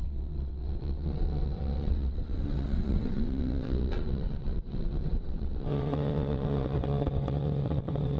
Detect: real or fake fake